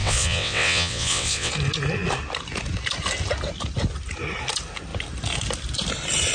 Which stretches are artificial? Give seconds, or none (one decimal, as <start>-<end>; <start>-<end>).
0.0-1.5

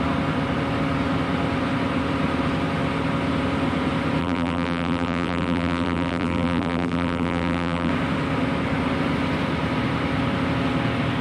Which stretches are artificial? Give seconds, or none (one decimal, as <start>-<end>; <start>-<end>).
4.2-7.9

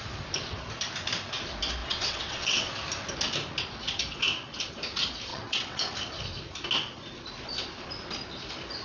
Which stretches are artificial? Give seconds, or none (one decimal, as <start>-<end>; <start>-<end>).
1.8-2.7; 5.3-5.9

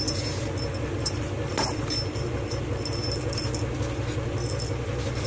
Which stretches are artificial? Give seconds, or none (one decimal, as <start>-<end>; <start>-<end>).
none

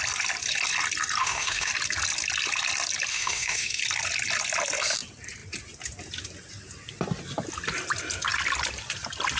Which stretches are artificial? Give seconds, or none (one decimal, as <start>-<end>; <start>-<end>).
1.2-1.7; 3.1-3.8